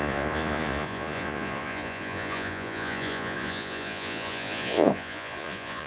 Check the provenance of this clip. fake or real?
fake